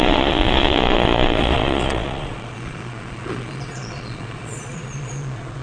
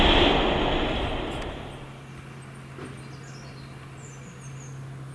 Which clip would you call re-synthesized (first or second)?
first